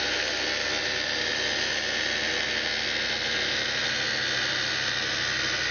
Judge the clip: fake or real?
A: real